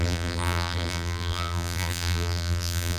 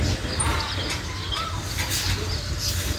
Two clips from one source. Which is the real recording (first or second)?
second